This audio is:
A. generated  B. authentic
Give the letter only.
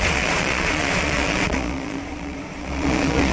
A